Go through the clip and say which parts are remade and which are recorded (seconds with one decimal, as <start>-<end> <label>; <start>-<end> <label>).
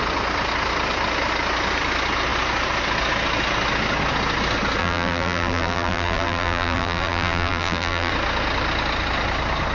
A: 0.0-4.8 recorded; 4.8-8.1 remade; 8.1-9.7 recorded